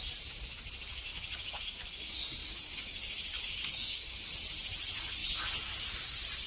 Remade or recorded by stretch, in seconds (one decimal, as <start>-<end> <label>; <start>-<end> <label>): 0.0-2.4 recorded; 2.4-4.2 remade; 4.2-6.5 recorded